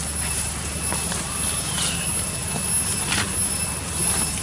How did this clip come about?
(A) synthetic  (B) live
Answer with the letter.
B